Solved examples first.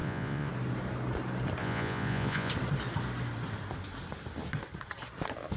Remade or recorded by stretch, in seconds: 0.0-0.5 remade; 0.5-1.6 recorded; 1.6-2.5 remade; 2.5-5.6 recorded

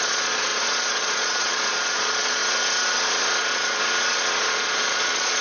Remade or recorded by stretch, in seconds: 0.0-2.4 remade; 2.4-3.4 recorded; 3.4-3.8 remade; 3.8-4.5 recorded; 4.5-5.4 remade

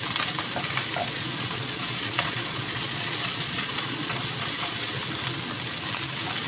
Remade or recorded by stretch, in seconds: 0.0-1.0 recorded; 1.0-4.9 remade; 4.9-6.5 recorded